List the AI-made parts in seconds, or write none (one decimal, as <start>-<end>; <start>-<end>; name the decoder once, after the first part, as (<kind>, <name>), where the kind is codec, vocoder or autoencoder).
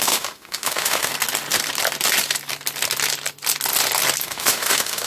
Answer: 0.0-1.1 (autoencoder, DAC-VAE); 4.2-5.1